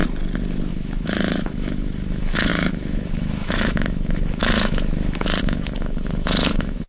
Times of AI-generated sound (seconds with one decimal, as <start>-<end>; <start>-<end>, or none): 0.7-6.9